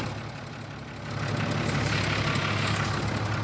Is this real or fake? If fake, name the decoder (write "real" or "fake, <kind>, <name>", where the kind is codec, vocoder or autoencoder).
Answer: real